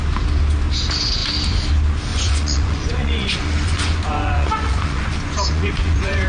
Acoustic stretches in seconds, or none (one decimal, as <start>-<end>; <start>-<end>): 0.0-2.1